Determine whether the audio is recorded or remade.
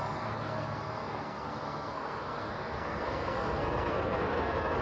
remade